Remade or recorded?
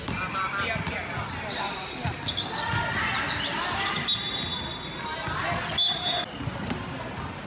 recorded